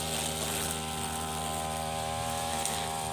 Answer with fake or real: real